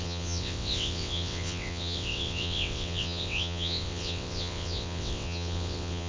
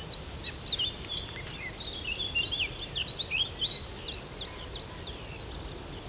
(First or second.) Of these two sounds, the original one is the second